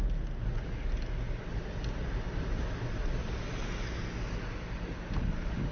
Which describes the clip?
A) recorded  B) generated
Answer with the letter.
A